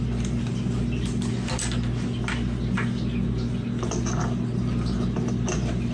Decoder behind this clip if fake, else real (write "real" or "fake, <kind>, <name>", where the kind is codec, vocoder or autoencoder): real